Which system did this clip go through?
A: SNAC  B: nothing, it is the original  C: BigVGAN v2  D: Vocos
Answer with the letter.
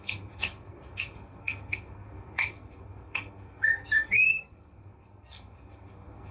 A